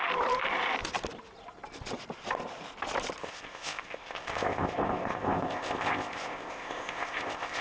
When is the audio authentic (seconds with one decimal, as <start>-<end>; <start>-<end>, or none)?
0.0-3.2